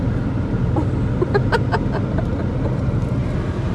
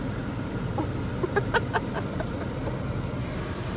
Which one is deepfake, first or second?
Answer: second